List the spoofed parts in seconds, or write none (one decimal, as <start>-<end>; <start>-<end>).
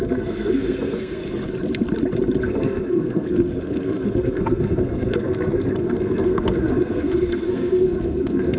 0.0-1.2; 2.4-8.6